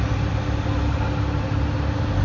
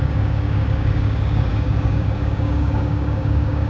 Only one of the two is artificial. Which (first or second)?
second